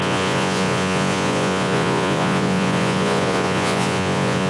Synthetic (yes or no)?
yes